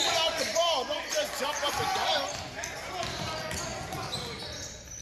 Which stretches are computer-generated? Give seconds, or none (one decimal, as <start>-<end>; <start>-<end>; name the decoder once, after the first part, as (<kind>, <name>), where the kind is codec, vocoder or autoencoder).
none